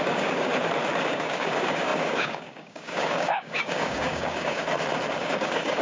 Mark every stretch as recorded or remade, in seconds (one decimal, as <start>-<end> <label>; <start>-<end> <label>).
0.0-0.5 remade; 0.5-1.1 recorded; 1.1-4.6 remade; 4.6-5.2 recorded; 5.2-5.8 remade

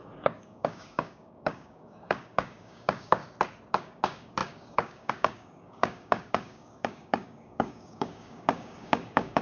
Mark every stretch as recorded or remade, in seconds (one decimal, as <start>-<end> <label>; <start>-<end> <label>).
0.0-3.2 remade; 3.2-3.7 recorded; 3.7-9.4 remade

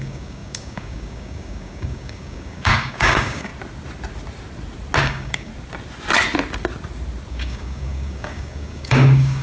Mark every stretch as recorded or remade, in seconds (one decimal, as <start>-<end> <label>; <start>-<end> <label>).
0.0-3.5 remade; 3.5-5.0 recorded; 5.0-5.5 remade; 5.5-7.3 recorded; 7.3-9.4 remade

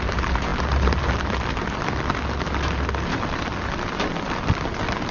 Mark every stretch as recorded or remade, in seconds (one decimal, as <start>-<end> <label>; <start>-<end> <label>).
0.0-5.1 recorded

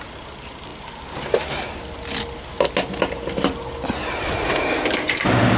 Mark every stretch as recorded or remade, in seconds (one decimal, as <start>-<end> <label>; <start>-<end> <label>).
0.0-5.6 recorded

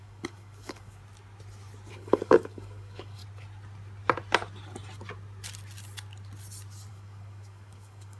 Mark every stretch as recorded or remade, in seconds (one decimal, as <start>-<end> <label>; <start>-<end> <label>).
0.0-1.0 remade; 1.0-1.9 recorded; 1.9-3.2 remade; 3.2-6.9 recorded; 6.9-8.2 remade

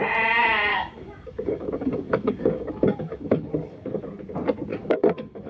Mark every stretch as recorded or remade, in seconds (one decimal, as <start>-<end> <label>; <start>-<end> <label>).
0.0-0.7 recorded; 0.7-4.0 remade; 4.0-4.7 recorded; 4.7-5.5 remade

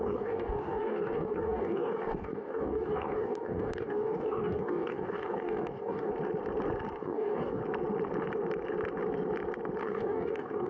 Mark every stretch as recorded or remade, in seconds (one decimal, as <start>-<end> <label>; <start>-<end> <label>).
0.0-6.1 remade; 6.1-7.0 recorded; 7.0-7.6 remade; 7.6-9.8 recorded; 9.8-10.7 remade